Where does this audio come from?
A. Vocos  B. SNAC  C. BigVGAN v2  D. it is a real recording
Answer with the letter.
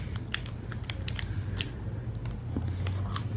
D